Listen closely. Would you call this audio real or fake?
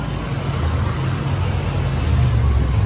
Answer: real